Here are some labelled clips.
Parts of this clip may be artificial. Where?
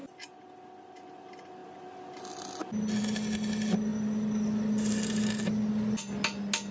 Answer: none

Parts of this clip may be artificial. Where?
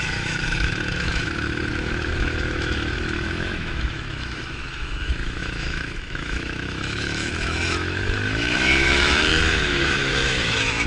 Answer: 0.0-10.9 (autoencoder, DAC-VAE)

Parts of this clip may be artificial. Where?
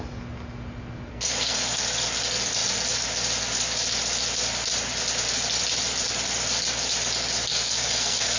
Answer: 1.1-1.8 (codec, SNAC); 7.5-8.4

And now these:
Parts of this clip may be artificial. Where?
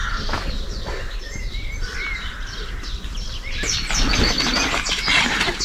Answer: 4.5-5.6 (vocoder, BigVGAN v2)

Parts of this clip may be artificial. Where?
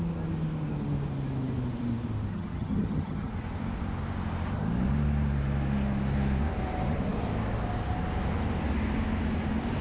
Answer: 2.3-3.3 (vocoder, HiFi-GAN)